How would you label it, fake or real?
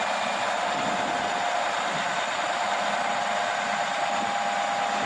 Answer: real